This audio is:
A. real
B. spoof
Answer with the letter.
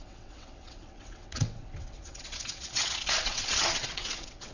B